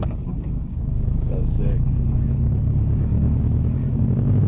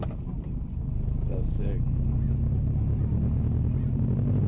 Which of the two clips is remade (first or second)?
first